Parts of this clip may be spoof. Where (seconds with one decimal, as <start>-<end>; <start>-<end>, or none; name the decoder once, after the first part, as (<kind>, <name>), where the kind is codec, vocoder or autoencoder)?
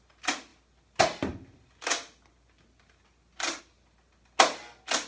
none